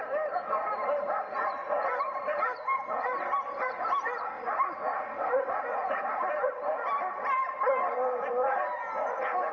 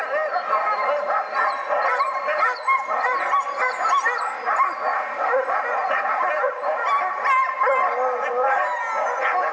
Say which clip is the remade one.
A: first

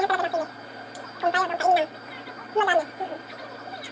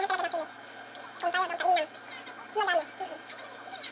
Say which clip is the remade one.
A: first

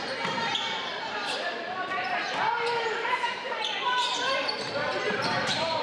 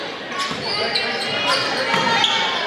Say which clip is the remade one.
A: first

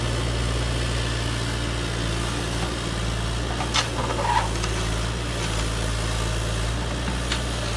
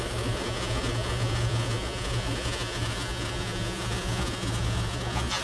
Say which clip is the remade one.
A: second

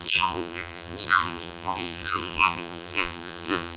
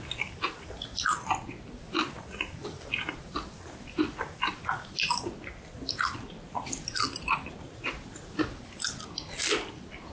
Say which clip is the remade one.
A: first